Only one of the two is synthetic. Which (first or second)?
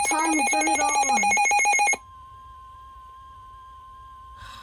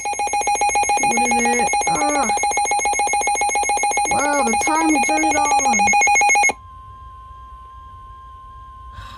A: first